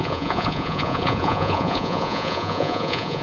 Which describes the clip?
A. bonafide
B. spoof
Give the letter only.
B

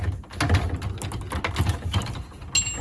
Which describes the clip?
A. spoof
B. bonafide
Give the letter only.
B